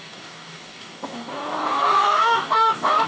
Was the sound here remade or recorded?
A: remade